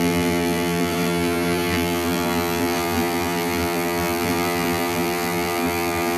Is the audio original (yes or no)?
no